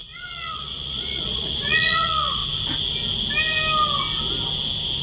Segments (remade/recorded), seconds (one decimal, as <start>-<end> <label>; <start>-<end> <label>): 0.0-2.4 remade; 2.4-5.0 recorded